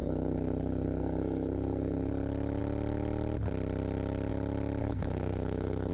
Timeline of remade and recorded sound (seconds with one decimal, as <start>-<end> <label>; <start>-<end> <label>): 0.0-2.1 remade; 2.1-4.8 recorded; 4.8-5.9 remade